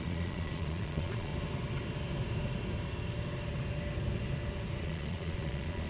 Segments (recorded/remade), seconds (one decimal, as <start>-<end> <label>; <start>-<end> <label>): 0.0-1.3 remade; 1.3-4.8 recorded; 4.8-5.9 remade